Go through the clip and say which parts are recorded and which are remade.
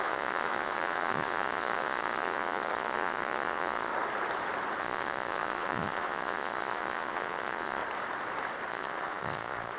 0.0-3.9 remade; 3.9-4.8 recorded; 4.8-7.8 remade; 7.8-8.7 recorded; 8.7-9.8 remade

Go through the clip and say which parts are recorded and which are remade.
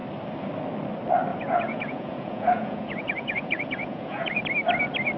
0.0-1.3 recorded; 1.3-4.4 remade; 4.4-5.2 recorded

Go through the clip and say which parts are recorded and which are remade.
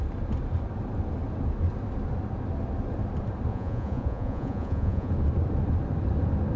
0.0-3.5 recorded; 3.5-5.1 remade; 5.1-6.6 recorded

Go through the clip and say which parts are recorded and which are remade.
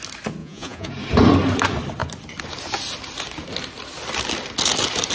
0.0-0.4 recorded; 0.4-0.9 remade; 0.9-5.1 recorded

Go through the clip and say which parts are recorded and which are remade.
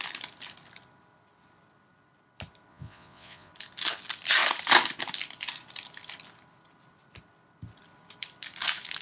0.0-2.7 recorded; 2.7-3.5 remade; 3.5-9.0 recorded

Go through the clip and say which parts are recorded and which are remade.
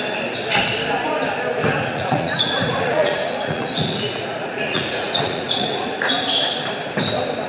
0.0-1.6 recorded; 1.6-6.1 remade; 6.1-7.5 recorded